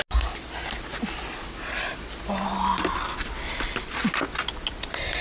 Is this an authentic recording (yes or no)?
yes